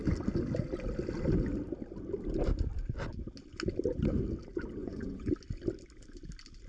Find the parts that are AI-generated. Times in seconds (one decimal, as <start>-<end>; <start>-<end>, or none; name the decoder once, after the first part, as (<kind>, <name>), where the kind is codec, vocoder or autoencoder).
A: 4.8-5.3 (vocoder, Vocos)